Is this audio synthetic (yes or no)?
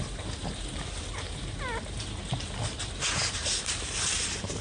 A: no